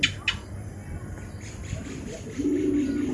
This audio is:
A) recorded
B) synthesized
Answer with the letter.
A